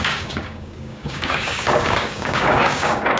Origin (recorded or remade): remade